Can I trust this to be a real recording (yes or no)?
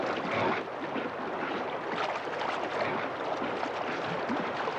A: yes